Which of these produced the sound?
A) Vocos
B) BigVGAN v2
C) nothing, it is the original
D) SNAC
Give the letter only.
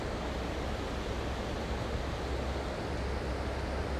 C